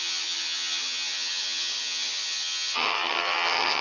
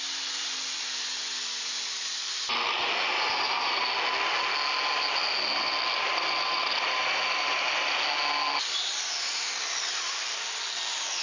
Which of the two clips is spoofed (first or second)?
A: first